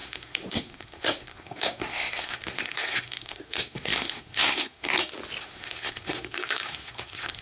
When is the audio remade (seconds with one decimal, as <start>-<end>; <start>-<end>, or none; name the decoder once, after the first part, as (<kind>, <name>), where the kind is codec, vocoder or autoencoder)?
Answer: 0.0-4.9 (codec, SNAC); 5.4-7.4

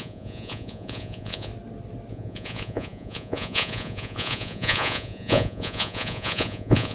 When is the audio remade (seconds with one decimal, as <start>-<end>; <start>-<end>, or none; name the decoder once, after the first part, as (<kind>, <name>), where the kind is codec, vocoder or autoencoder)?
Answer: 0.0-1.5 (vocoder, Vocos); 2.1-6.9

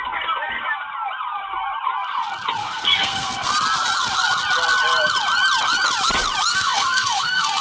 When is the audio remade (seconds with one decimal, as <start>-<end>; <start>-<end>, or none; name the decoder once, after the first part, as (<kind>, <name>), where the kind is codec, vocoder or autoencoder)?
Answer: 2.6-3.5 (codec, SNAC); 6.5-7.6